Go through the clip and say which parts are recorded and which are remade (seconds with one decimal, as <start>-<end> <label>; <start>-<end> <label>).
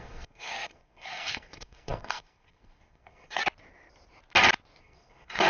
0.0-3.4 remade; 3.4-4.8 recorded; 4.8-5.5 remade